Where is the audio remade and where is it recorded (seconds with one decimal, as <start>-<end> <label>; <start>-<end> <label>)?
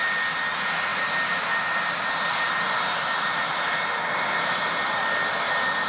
0.0-5.9 recorded